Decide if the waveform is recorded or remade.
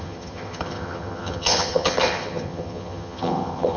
remade